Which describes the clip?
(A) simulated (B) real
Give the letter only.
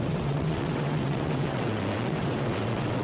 A